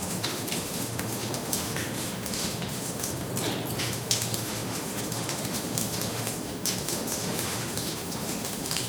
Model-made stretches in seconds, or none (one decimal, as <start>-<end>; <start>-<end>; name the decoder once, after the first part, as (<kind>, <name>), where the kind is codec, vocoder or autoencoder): 0.0-3.3 (autoencoder, DAC-VAE); 3.8-8.9